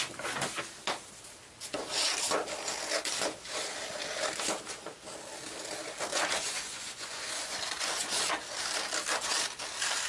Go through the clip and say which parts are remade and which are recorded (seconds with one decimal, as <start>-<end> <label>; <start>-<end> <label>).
0.0-6.1 recorded; 6.1-8.2 remade; 8.2-10.1 recorded